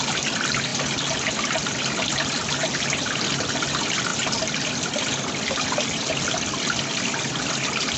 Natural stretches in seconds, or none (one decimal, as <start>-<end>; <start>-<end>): 0.0-8.0